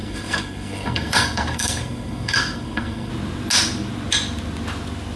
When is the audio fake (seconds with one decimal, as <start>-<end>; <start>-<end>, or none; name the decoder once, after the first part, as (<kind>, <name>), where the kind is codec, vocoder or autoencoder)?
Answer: 0.0-3.1 (codec, SNAC)

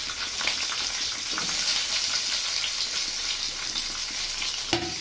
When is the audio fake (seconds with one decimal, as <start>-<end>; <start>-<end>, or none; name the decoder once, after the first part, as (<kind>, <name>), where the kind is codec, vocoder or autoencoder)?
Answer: none

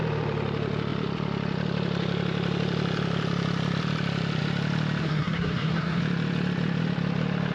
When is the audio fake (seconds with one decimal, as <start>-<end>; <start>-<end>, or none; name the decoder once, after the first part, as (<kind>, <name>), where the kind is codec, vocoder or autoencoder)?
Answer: 5.0-6.0 (codec, SNAC)

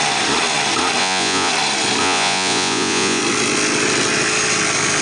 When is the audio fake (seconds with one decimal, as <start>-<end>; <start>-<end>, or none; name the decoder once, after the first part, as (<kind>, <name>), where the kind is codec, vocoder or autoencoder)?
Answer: 1.0-1.5 (vocoder, Vocos); 2.0-3.2

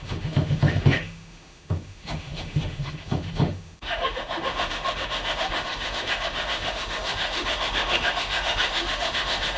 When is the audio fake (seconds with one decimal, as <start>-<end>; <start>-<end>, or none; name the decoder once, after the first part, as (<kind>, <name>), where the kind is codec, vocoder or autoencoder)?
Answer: 0.0-9.6 (autoencoder, DAC-VAE)